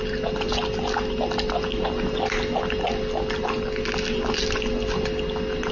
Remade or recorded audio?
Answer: recorded